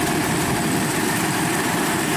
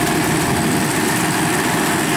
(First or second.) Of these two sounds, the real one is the second